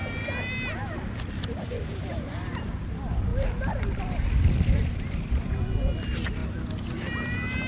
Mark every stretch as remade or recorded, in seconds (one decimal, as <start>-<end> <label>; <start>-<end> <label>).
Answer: 0.0-1.2 recorded; 1.2-3.3 remade; 3.3-3.8 recorded; 3.8-6.4 remade; 6.4-7.0 recorded; 7.0-7.7 remade